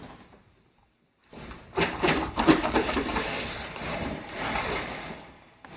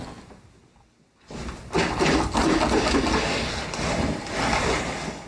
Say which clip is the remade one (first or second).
first